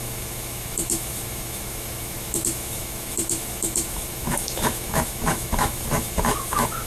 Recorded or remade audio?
remade